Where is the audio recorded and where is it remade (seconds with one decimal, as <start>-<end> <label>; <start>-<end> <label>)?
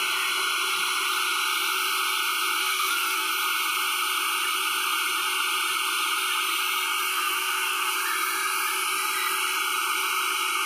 0.0-2.6 recorded; 2.6-3.3 remade; 3.3-7.1 recorded; 7.1-7.9 remade; 7.9-10.7 recorded